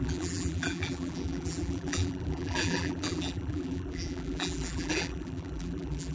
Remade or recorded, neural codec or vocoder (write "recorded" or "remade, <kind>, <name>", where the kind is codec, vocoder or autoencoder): remade, vocoder, BigVGAN v2